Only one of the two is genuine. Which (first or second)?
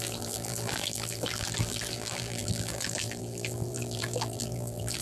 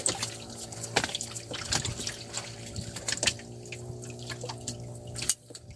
second